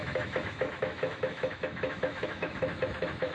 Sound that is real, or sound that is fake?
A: fake